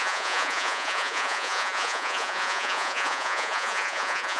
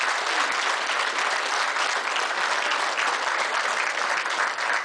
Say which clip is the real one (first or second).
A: second